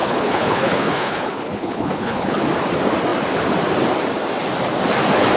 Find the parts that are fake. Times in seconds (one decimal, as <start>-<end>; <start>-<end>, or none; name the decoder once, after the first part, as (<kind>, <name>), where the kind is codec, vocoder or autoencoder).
0.0-2.4 (codec, HILCodec)